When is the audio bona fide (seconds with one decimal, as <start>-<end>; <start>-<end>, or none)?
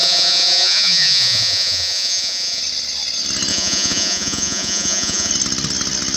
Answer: 2.6-3.5; 5.3-6.2